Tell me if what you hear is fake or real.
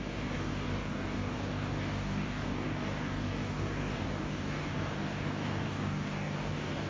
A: fake